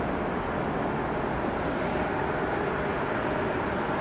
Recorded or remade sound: recorded